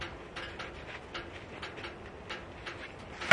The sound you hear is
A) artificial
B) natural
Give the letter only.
B